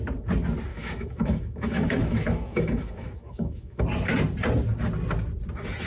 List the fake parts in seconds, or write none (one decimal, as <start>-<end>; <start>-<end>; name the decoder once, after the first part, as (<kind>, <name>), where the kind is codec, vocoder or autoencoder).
0.7-3.8 (autoencoder, DAC-VAE)